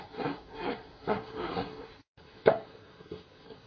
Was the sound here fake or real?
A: fake